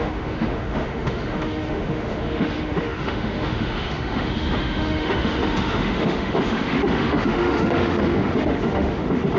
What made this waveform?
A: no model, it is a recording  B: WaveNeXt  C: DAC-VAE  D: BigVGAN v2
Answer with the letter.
C